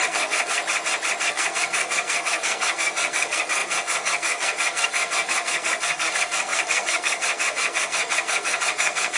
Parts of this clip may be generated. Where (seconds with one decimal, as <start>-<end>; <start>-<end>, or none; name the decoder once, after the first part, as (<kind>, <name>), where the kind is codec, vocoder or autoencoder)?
0.0-0.6 (codec, SNAC); 1.2-9.2